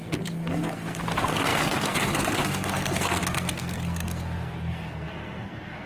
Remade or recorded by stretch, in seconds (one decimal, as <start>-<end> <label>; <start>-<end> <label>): 0.0-5.9 remade